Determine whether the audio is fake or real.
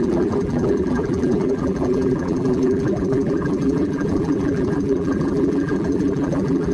fake